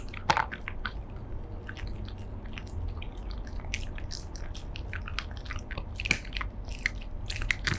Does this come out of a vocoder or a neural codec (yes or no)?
no